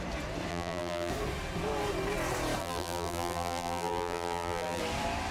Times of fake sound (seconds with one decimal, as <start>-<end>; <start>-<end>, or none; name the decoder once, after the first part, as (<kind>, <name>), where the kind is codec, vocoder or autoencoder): 0.5-1.1 (vocoder, BigVGAN v2); 2.6-4.8